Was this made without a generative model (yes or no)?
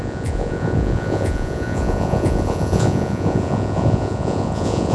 no